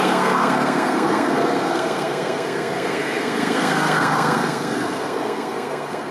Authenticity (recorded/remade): remade